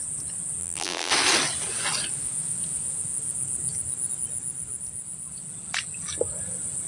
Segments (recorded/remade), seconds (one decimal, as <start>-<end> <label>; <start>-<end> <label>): 0.0-0.6 recorded; 0.6-1.1 remade; 1.1-6.9 recorded